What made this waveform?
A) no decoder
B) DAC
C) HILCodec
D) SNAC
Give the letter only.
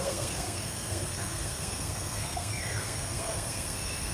D